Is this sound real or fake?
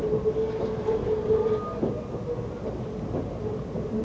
real